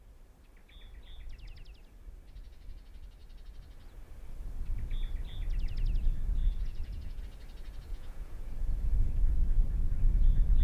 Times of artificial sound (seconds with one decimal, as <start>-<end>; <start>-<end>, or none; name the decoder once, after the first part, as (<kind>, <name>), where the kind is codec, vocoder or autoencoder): 6.4-7.2 (vocoder, Vocos); 7.9-9.2